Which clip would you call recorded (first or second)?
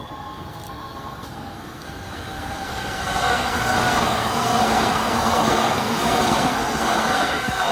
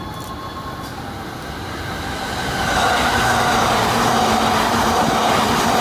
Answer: second